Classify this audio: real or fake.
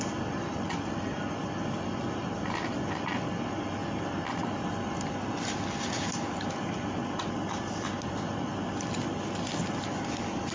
real